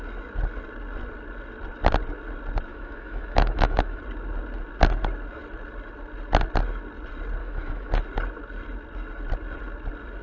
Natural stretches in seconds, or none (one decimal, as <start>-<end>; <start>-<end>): 0.0-2.7; 4.0-7.4; 7.9-10.2